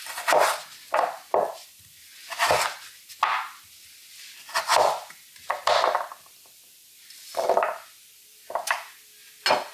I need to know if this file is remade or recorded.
recorded